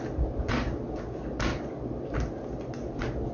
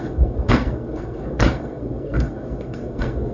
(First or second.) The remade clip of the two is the second